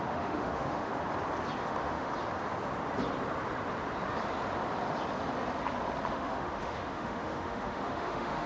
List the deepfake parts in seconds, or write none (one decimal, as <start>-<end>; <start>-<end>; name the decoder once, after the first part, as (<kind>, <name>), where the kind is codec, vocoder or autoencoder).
0.0-0.9 (autoencoder, DAC-VAE); 1.6-2.1; 6.1-8.5